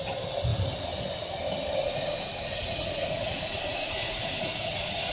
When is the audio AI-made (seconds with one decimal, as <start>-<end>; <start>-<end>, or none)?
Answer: 1.8-5.1